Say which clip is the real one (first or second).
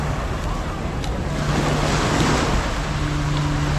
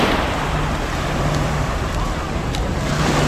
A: first